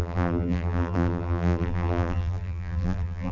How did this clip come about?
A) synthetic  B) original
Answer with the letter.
A